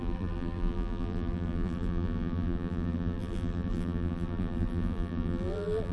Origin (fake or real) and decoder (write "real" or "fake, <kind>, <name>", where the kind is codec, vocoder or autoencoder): fake, vocoder, BigVGAN v2